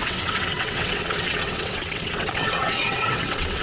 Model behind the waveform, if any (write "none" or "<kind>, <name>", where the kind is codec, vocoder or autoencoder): vocoder, WaveNeXt